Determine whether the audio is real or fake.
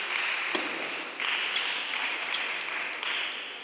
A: real